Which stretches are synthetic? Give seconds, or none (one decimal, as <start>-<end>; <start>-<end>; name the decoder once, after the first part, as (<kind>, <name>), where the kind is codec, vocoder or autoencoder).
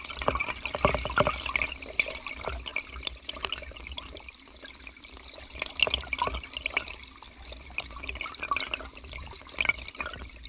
none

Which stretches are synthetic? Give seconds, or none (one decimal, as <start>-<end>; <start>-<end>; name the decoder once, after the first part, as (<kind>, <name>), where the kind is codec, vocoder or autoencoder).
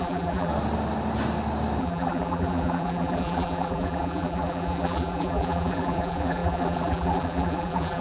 0.0-0.5 (vocoder, BigVGAN v2); 1.8-8.0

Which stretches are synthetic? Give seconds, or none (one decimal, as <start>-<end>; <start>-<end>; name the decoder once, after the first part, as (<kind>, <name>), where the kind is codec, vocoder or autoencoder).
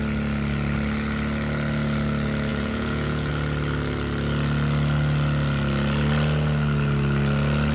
2.5-3.3 (vocoder, Vocos)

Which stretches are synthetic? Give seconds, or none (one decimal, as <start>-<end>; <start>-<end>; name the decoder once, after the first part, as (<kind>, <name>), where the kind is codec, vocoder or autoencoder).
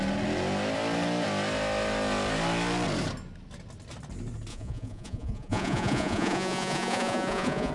4.5-7.7 (vocoder, Vocos)